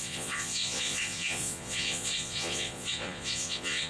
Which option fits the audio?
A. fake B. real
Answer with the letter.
A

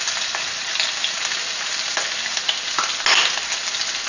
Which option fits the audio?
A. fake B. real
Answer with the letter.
B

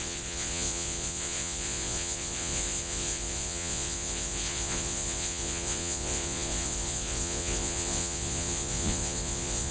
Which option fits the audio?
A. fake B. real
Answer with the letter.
A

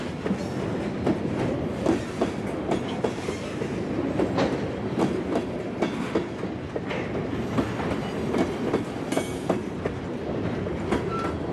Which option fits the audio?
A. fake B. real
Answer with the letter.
B